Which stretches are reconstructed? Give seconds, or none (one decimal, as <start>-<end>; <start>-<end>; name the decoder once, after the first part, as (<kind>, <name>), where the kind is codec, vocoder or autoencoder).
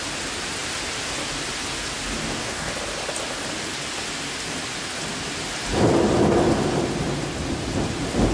2.2-2.7 (codec, DAC)